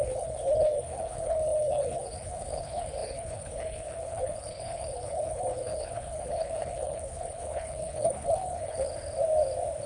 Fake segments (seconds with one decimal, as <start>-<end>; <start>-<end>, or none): 0.0-8.9